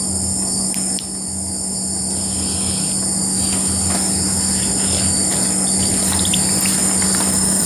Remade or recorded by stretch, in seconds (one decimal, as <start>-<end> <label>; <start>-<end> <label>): 0.0-6.8 recorded; 6.8-7.7 remade